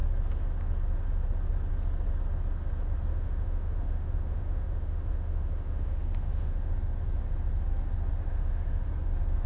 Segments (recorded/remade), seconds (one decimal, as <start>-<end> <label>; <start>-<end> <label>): 0.0-3.1 recorded; 3.1-6.7 remade; 6.7-8.3 recorded; 8.3-8.9 remade; 8.9-9.5 recorded

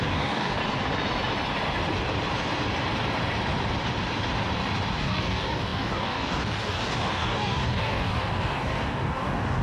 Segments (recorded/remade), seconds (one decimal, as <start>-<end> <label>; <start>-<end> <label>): 0.0-0.6 remade; 0.6-5.0 recorded; 5.0-9.6 remade

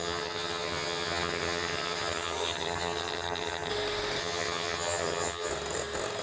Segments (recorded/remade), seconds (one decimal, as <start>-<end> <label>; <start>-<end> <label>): 0.0-3.7 remade; 3.7-4.2 recorded; 4.2-5.5 remade; 5.5-6.2 recorded

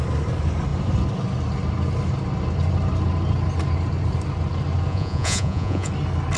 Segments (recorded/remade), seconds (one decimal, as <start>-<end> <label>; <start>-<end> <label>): 0.0-4.9 recorded; 4.9-5.9 remade; 5.9-6.4 recorded

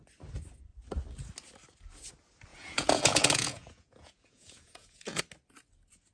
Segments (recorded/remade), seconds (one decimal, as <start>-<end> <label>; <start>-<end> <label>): 0.0-2.5 recorded; 2.5-5.2 remade; 5.2-6.1 recorded

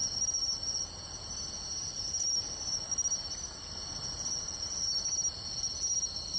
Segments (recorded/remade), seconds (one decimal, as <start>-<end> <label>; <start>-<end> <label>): 0.0-6.4 recorded

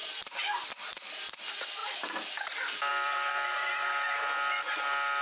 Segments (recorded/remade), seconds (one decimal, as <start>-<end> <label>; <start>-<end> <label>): 0.0-0.7 remade; 0.7-2.9 recorded; 2.9-3.7 remade; 3.7-5.2 recorded

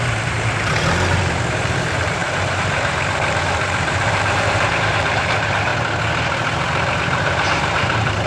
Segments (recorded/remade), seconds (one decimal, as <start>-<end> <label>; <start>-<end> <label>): 0.0-5.7 remade; 5.7-7.0 recorded; 7.0-8.3 remade